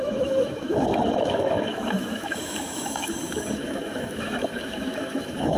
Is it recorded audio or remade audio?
remade